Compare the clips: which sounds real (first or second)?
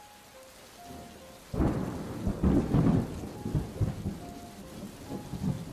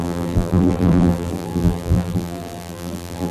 first